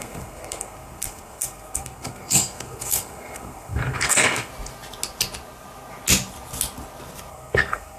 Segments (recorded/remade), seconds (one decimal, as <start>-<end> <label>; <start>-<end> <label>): 0.0-4.5 remade; 4.5-7.3 recorded; 7.3-8.0 remade